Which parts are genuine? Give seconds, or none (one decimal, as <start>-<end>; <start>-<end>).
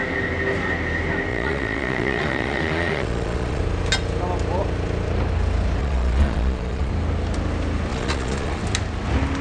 0.0-1.3; 3.6-5.8; 6.9-7.9; 8.6-9.4